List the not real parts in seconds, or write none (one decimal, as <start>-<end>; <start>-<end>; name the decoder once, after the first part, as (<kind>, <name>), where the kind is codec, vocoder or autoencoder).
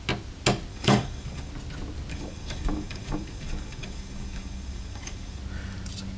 0.7-1.5 (codec, DAC); 2.1-5.4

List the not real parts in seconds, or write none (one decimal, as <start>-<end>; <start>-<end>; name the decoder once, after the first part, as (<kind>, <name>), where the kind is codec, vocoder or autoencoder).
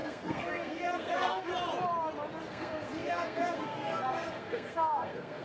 0.0-1.5 (codec, SNAC); 2.4-5.4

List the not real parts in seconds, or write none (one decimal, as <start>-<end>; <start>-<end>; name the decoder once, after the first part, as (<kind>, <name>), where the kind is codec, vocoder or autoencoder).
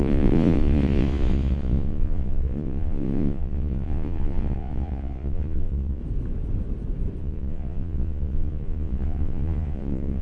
0.0-6.0 (vocoder, Vocos); 7.2-10.2